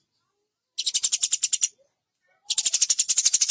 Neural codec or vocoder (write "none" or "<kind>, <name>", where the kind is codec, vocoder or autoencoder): none